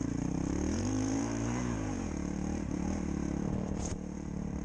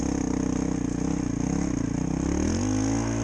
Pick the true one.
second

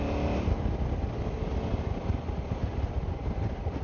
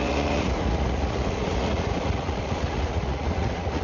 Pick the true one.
first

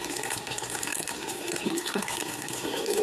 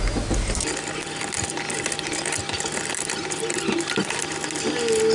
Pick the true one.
second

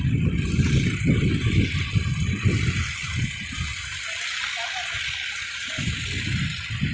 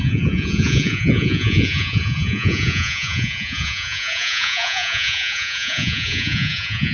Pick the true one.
first